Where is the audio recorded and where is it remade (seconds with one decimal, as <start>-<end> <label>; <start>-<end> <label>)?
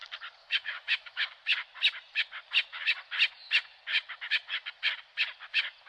0.0-0.4 recorded; 0.4-1.2 remade; 1.2-5.9 recorded